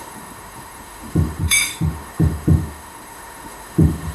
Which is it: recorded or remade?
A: remade